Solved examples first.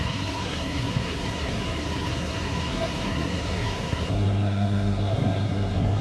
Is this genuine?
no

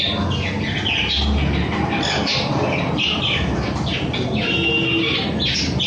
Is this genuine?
yes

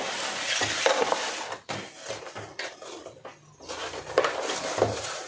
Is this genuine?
yes